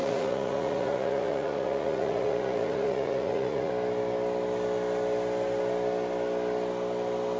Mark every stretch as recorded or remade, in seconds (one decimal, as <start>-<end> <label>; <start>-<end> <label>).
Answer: 0.0-3.7 remade; 3.7-7.4 recorded